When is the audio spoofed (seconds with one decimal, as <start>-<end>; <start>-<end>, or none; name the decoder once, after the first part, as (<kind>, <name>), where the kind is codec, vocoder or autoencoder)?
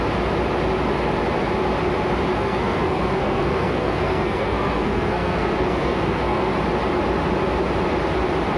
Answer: 2.3-6.5 (codec, SNAC)